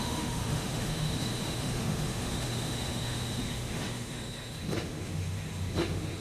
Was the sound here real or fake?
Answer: fake